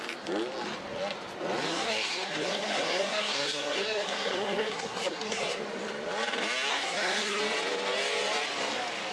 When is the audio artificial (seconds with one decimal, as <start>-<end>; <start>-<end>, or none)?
1.7-5.6; 6.7-7.4